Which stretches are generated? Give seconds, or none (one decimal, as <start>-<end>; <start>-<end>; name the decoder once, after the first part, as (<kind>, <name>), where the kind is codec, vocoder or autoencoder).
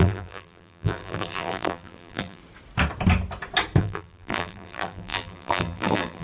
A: 0.0-2.4 (vocoder, BigVGAN v2); 3.8-6.2